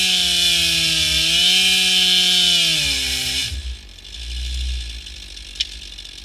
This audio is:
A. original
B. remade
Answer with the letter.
A